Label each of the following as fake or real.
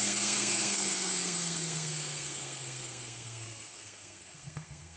fake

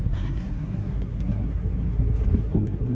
fake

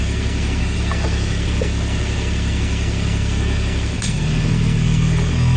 fake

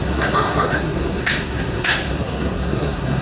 fake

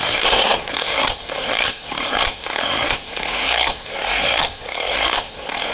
fake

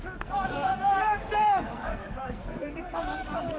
fake